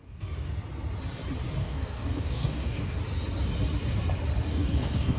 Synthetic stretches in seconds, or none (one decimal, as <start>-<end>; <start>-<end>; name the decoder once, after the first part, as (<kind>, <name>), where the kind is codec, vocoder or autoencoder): 0.0-0.5 (codec, DAC); 1.6-3.0; 4.5-5.2